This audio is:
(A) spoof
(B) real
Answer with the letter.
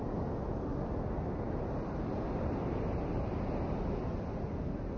B